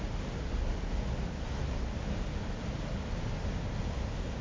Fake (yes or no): no